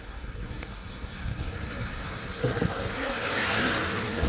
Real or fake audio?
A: fake